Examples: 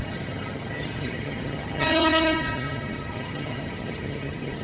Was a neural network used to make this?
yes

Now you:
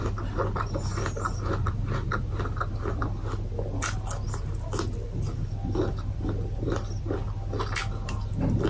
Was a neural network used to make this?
no